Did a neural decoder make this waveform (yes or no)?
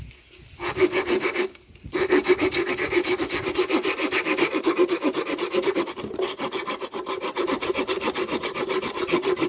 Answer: no